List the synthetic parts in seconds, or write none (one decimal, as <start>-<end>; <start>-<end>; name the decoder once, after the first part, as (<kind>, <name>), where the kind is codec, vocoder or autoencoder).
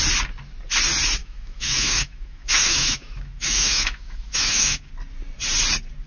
1.2-4.9 (autoencoder, DAC-VAE)